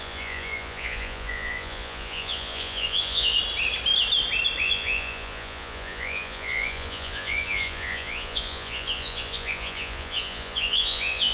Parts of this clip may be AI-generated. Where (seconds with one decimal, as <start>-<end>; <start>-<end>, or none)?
0.0-3.4; 4.6-11.3